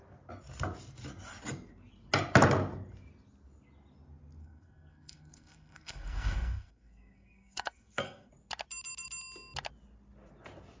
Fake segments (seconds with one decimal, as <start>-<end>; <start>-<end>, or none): 4.4-8.3